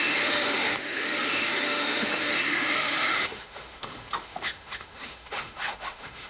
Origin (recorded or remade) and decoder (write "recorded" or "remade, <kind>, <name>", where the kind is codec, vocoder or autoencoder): remade, autoencoder, DAC-VAE